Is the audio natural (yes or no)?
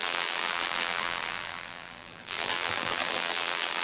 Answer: no